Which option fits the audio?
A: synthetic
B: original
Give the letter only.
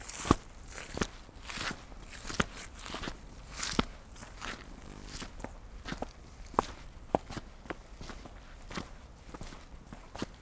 B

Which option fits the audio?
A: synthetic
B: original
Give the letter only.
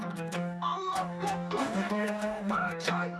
A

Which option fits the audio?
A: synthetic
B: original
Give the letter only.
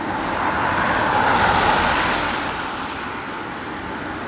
A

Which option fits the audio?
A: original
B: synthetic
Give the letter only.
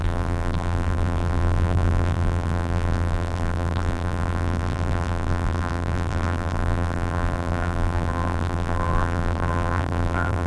B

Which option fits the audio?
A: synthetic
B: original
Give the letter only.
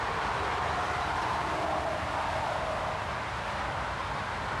B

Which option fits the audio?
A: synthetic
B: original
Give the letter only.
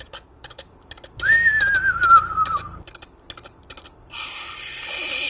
B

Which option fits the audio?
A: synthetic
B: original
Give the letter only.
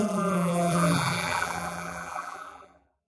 A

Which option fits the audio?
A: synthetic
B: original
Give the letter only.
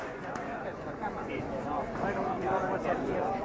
A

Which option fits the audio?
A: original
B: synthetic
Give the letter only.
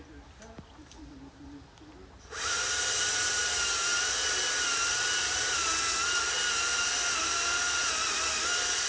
A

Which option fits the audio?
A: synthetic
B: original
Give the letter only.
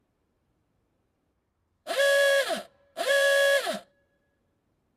A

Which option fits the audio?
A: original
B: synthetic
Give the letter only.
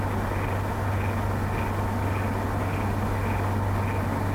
A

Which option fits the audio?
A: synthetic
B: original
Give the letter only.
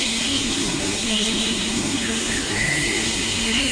A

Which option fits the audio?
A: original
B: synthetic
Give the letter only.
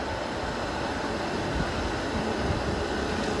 A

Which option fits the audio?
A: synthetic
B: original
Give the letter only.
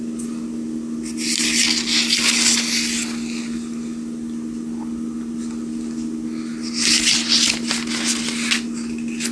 B